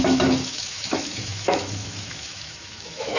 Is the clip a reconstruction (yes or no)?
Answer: yes